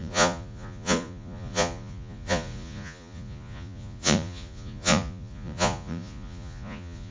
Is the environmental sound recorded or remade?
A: remade